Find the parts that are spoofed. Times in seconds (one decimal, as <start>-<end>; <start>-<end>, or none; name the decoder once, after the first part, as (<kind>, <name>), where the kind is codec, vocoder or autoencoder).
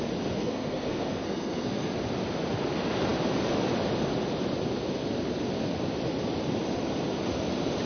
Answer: 0.4-1.9 (codec, SNAC)